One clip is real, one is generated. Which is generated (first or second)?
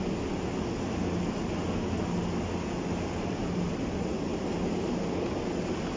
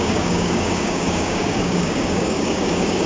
second